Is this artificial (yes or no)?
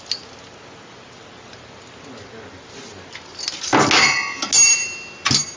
no